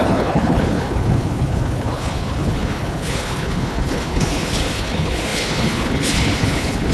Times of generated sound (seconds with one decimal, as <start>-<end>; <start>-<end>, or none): 0.0-6.9